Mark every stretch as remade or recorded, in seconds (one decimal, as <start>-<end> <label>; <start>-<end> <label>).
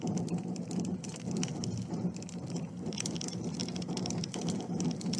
0.0-3.6 recorded; 3.6-4.5 remade; 4.5-5.2 recorded